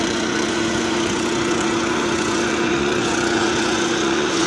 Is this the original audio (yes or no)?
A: no